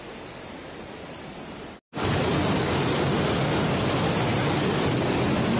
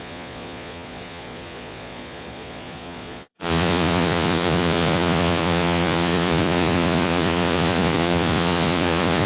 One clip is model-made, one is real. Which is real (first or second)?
first